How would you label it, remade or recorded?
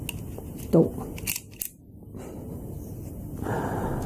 recorded